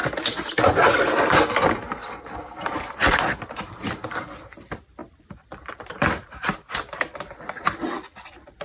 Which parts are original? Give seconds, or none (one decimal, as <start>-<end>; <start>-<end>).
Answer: 0.0-3.1